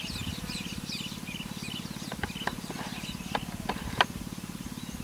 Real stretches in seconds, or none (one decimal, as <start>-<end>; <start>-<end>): 0.0-5.0

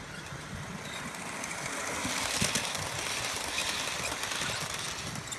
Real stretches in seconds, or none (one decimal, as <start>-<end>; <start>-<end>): 0.0-5.4

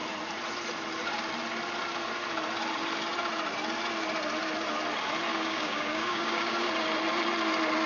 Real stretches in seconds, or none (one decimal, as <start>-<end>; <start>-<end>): 0.0-5.3; 6.7-7.9

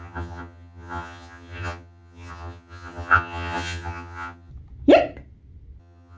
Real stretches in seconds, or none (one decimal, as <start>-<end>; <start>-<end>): 4.5-5.8

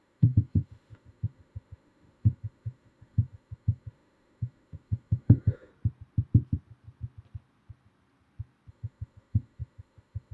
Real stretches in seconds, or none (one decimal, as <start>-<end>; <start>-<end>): 5.7-8.7

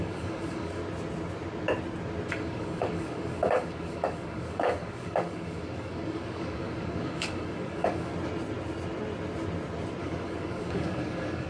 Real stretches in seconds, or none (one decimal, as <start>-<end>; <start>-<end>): 0.8-2.3; 8.1-10.0